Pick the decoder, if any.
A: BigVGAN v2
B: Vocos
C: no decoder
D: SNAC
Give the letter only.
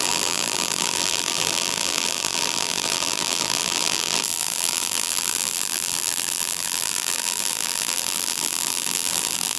A